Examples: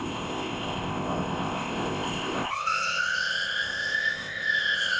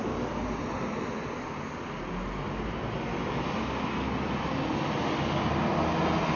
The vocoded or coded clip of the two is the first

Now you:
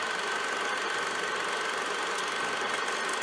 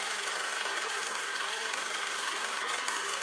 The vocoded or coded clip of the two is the second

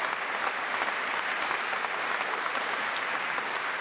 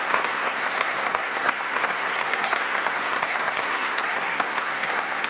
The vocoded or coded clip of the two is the second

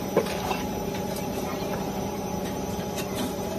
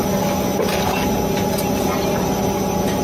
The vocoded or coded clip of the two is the first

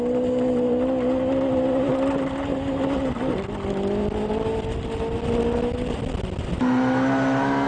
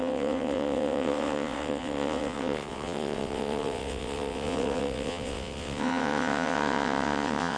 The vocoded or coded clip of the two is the second